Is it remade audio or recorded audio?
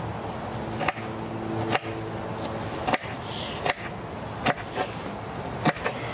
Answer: recorded